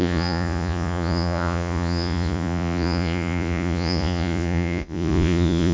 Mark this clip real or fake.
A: fake